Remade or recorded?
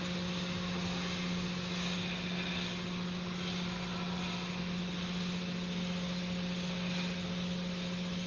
recorded